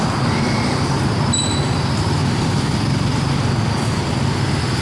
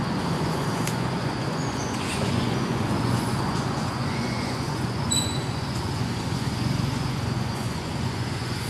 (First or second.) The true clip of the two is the first